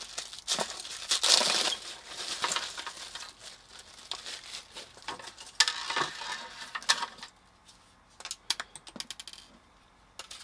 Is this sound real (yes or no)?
yes